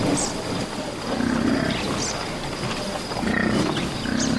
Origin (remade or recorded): recorded